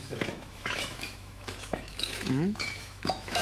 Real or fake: fake